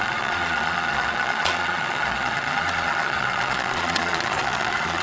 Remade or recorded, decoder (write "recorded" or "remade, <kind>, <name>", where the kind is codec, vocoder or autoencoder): remade, vocoder, Vocos